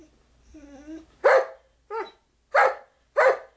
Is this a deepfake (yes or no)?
no